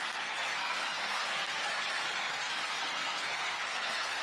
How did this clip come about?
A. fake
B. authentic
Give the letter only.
A